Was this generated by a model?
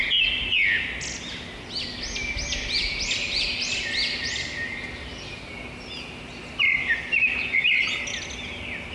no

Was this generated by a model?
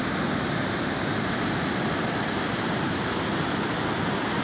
no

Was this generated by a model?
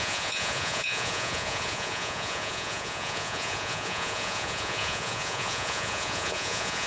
yes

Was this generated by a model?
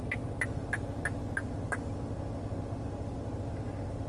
no